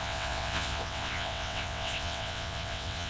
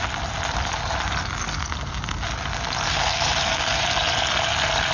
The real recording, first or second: second